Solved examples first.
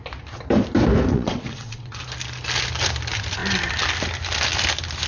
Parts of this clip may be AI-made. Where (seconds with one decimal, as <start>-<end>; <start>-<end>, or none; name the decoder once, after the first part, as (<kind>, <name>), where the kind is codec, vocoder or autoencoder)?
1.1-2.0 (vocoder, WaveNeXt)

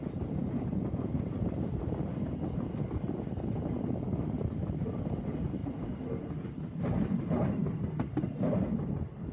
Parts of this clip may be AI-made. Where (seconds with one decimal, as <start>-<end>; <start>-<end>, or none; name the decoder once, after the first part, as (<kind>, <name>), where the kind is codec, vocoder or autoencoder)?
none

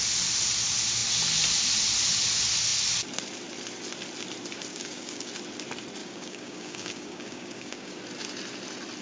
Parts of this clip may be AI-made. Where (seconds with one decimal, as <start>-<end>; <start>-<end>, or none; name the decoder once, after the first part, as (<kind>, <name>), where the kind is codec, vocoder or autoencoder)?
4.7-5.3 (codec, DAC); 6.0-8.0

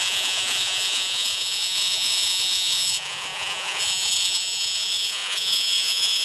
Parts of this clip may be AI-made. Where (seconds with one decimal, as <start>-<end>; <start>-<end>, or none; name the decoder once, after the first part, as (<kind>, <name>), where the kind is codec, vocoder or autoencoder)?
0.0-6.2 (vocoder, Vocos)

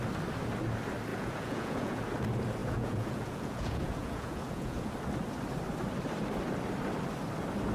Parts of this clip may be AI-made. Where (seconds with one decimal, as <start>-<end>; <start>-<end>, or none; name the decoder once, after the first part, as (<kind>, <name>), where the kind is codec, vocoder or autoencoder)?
1.1-2.0 (vocoder, Vocos); 2.6-4.9

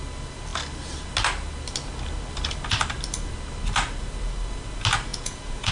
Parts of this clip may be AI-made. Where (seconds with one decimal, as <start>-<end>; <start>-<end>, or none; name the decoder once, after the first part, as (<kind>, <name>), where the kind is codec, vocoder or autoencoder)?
5.1-5.7 (vocoder, Vocos)

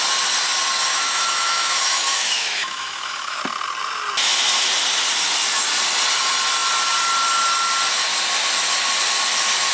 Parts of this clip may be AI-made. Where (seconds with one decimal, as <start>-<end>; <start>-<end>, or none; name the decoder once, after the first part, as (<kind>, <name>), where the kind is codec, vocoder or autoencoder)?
0.9-3.4 (autoencoder, DAC-VAE)

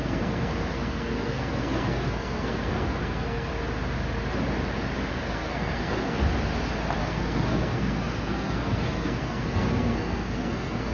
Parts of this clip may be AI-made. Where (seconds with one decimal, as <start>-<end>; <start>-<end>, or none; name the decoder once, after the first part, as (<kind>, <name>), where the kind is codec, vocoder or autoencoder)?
0.0-3.5 (codec, SNAC); 5.1-6.2; 7.0-10.9